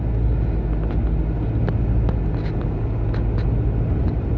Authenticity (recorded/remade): recorded